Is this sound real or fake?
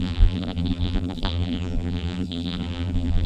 fake